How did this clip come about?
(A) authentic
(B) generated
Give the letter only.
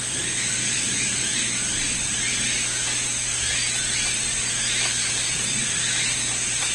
A